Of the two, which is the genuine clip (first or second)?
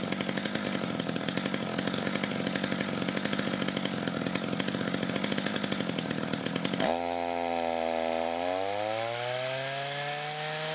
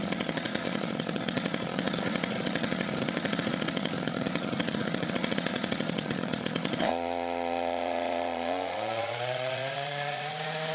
first